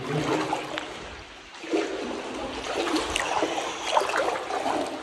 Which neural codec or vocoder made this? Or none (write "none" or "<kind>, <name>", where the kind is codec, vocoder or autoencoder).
none